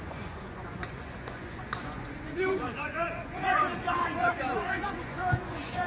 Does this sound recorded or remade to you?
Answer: remade